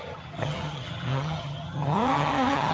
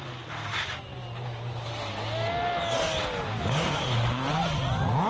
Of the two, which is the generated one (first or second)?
first